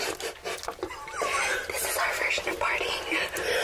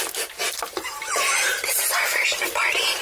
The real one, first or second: first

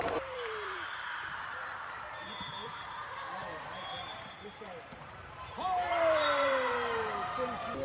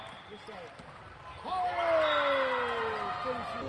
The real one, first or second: second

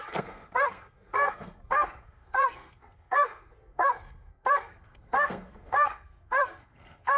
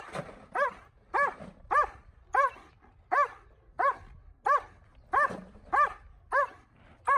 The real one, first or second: second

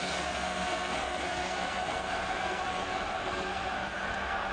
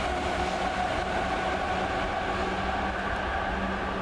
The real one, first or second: second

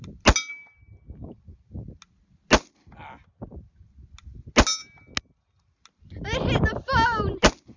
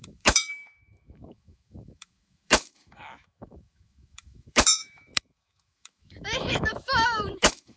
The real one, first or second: first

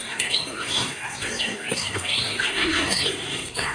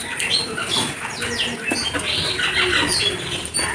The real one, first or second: second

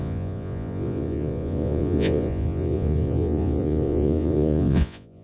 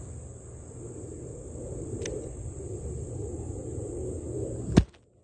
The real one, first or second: second